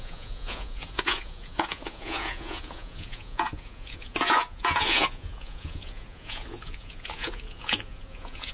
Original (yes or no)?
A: no